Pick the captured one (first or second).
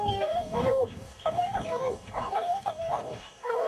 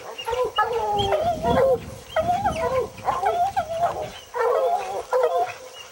second